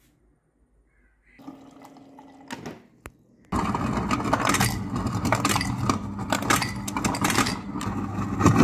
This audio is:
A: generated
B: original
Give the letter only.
B